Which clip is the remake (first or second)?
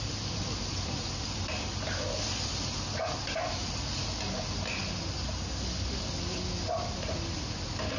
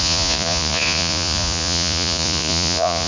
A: second